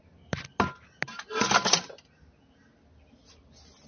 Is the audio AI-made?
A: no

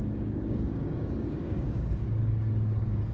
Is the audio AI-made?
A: yes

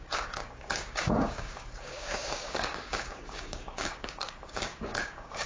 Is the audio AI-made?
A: yes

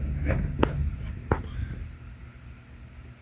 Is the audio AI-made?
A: no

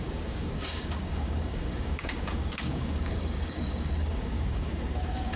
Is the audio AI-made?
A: yes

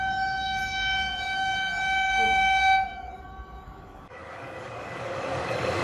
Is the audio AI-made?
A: yes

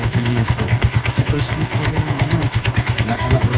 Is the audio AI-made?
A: yes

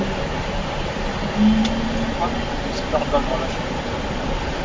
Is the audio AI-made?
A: no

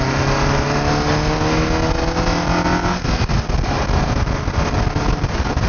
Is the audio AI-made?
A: no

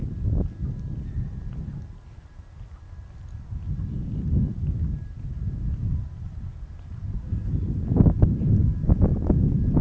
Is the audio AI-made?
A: no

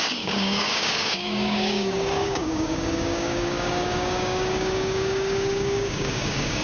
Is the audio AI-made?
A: yes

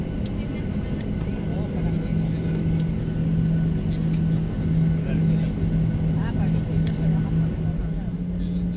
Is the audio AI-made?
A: no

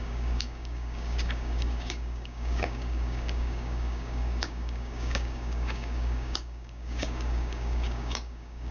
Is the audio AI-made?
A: yes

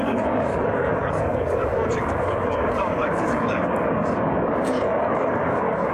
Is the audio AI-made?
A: yes